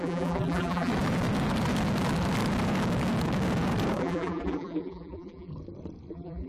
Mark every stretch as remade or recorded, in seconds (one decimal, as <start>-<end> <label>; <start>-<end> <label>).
0.0-0.9 remade; 0.9-4.0 recorded; 4.0-5.5 remade; 5.5-6.1 recorded; 6.1-6.5 remade